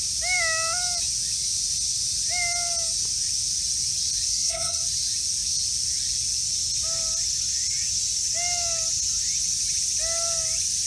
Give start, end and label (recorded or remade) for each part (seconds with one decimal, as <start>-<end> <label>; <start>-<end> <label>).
0.0-4.3 recorded; 4.3-4.8 remade; 4.8-10.9 recorded